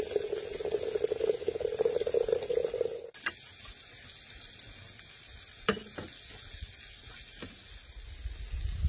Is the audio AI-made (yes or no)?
no